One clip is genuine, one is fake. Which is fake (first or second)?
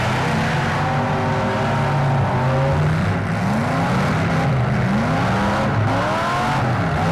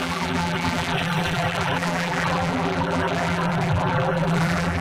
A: second